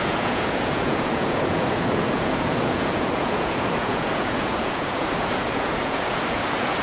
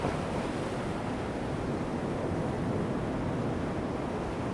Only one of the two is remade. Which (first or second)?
first